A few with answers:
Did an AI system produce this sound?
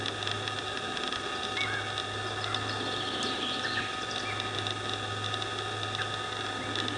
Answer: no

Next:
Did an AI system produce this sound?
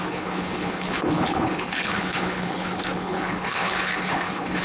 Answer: yes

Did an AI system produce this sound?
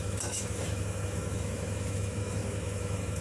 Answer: yes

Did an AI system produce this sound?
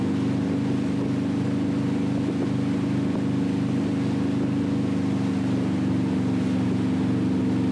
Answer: no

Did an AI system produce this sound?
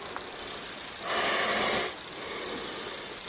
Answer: no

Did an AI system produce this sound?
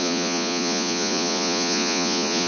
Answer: yes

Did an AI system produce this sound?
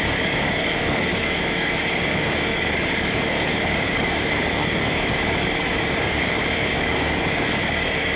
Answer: yes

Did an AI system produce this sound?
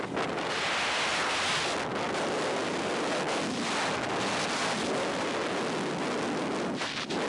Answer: no